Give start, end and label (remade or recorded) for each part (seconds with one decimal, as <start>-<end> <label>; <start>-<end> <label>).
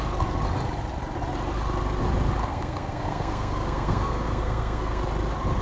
0.0-2.4 recorded; 2.4-5.0 remade; 5.0-5.6 recorded